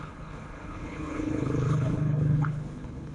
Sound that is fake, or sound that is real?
fake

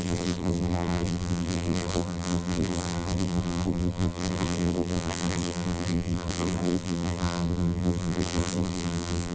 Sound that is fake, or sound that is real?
fake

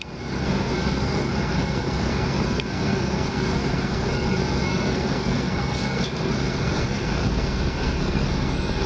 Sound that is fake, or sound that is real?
fake